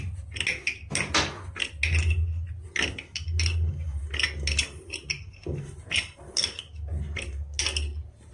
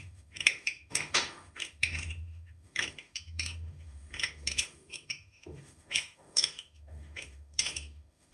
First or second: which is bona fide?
first